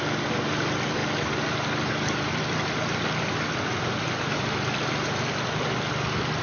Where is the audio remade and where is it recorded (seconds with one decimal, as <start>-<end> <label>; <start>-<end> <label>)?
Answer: 0.0-6.4 recorded